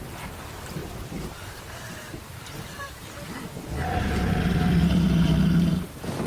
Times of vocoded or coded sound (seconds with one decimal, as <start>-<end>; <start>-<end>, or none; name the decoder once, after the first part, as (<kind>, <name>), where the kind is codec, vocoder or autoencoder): 0.8-3.0 (vocoder, BigVGAN v2)